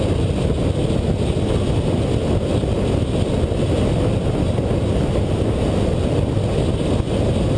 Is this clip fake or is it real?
real